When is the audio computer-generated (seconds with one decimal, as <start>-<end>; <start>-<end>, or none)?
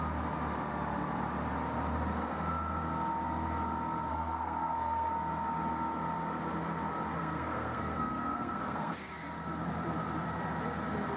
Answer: 4.1-5.1; 7.2-9.1